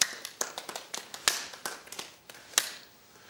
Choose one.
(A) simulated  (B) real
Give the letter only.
B